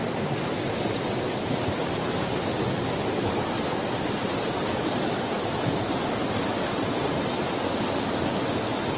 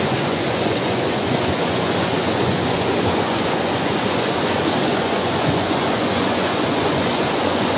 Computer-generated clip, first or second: second